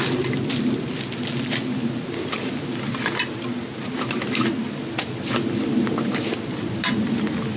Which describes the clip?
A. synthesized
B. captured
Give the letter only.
B